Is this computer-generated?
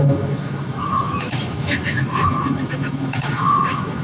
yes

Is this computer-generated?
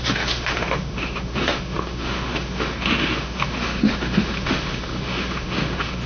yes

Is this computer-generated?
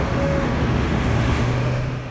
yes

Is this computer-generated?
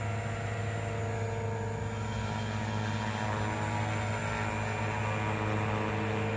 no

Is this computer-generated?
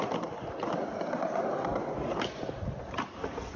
no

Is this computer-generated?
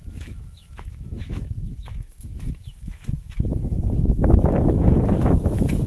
yes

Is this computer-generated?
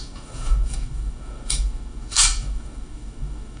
yes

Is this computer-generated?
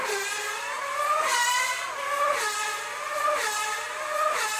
no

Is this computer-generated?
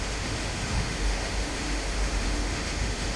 yes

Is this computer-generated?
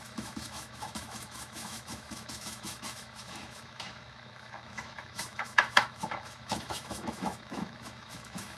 yes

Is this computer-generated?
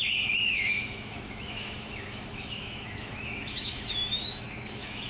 yes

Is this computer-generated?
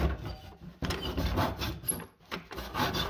no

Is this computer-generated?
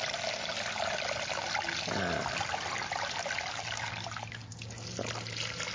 no